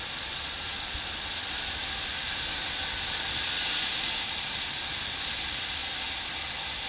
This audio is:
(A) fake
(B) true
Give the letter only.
B